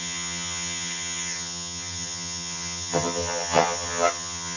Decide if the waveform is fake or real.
fake